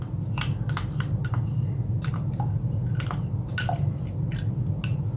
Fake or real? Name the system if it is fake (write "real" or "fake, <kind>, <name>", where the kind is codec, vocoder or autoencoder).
real